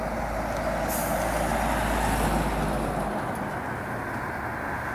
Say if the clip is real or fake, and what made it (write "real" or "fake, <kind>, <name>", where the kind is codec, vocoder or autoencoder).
real